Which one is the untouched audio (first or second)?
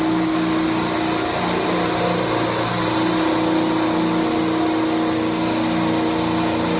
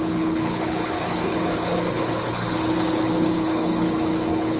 first